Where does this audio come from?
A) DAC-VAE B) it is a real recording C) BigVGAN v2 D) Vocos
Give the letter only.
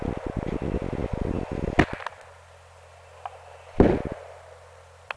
B